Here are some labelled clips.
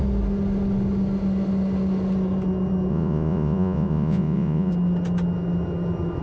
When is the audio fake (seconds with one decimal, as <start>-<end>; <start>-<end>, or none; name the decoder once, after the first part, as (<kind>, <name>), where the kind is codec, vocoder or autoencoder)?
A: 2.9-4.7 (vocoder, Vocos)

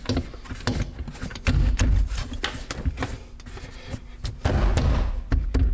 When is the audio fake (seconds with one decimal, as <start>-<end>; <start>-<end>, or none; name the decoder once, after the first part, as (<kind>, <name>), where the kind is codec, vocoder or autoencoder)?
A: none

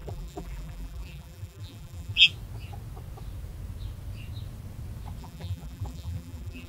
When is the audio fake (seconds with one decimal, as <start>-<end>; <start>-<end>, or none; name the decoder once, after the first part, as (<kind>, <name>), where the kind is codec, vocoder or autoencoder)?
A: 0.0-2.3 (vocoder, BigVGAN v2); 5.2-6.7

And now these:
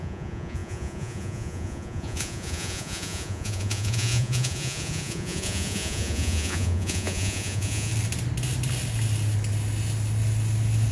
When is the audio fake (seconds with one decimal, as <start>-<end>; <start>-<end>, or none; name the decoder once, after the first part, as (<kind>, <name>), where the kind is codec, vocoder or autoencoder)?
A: 0.0-7.9 (vocoder, Vocos)

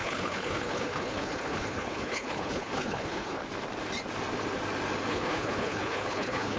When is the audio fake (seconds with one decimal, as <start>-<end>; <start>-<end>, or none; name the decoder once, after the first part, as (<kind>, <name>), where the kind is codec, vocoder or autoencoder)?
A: 0.0-3.4 (codec, HILCodec); 5.1-6.6

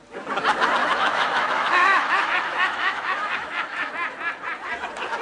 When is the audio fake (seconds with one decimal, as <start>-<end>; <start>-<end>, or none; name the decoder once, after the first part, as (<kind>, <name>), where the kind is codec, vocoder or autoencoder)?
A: 0.8-3.9 (autoencoder, DAC-VAE)

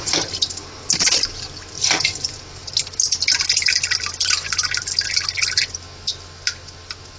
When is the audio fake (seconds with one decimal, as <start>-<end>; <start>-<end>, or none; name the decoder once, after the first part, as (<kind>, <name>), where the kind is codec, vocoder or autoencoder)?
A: none

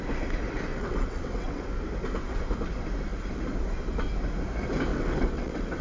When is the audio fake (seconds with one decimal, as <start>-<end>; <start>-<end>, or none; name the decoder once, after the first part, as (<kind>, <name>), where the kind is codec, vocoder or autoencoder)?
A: 0.7-1.7 (vocoder, WaveNeXt); 4.9-5.8